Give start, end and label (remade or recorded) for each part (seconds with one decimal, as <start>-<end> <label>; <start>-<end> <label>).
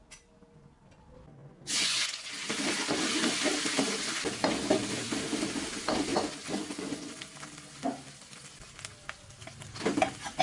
0.0-1.4 recorded; 1.4-2.3 remade; 2.3-6.1 recorded; 6.1-7.2 remade; 7.2-10.4 recorded